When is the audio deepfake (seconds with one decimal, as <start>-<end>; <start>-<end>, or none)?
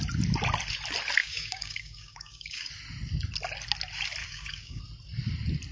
1.2-2.7; 4.2-4.8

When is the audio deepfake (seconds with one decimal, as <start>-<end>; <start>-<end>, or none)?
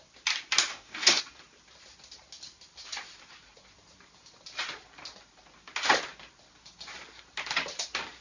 0.7-1.2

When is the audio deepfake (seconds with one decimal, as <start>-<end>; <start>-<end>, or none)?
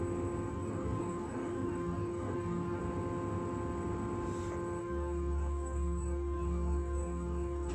0.5-2.8; 4.8-7.7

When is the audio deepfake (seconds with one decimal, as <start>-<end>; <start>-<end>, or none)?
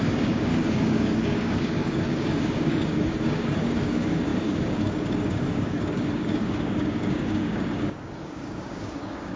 0.0-9.4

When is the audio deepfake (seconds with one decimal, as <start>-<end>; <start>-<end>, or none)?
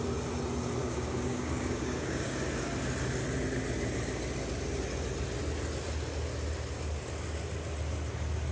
0.8-2.4